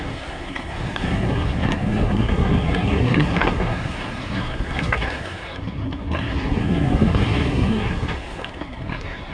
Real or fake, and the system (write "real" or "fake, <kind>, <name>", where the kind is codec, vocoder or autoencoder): fake, codec, SNAC